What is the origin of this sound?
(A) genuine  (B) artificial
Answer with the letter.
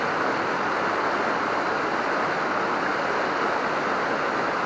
A